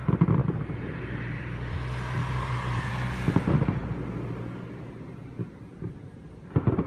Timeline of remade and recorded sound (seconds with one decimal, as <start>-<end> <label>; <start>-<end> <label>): 0.0-0.4 recorded; 0.4-1.7 remade; 1.7-2.2 recorded; 2.2-2.9 remade; 2.9-6.9 recorded